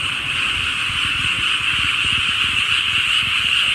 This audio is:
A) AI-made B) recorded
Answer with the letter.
A